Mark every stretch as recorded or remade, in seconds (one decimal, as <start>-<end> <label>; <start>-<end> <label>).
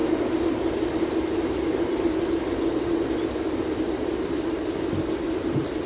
0.0-5.9 recorded